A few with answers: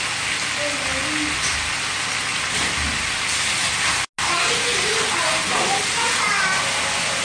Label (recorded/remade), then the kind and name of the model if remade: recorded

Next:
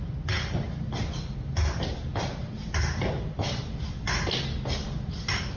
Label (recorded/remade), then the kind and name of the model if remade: recorded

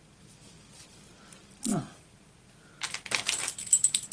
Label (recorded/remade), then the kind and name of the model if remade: recorded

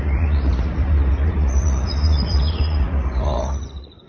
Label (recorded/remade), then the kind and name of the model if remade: remade, vocoder, Vocos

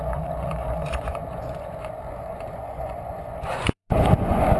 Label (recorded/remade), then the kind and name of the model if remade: remade, vocoder, Vocos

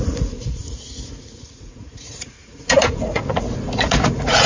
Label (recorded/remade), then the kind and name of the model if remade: remade, vocoder, Vocos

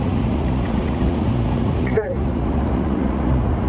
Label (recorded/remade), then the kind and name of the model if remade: remade, vocoder, Vocos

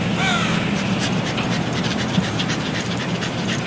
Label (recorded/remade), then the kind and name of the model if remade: recorded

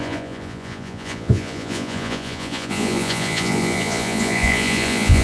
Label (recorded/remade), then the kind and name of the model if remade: remade, vocoder, Vocos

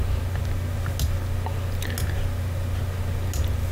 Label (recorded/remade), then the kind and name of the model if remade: recorded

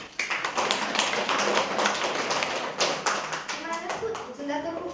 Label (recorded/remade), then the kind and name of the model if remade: recorded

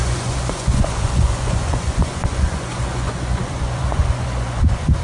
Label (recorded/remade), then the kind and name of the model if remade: remade, vocoder, Vocos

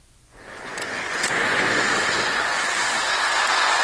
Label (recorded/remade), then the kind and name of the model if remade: remade, vocoder, Vocos